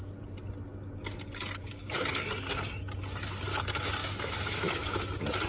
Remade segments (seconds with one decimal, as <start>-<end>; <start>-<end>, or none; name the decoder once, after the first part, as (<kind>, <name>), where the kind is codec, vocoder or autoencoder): 4.0-5.0 (autoencoder, DAC-VAE)